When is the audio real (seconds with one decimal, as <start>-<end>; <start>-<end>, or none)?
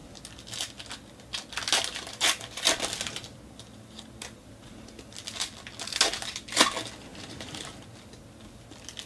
0.0-7.1; 7.9-9.1